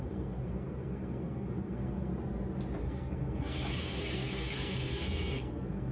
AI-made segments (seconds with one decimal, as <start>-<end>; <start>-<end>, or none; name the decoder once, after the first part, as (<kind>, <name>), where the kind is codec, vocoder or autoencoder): 0.0-2.1 (codec, SNAC); 2.8-5.9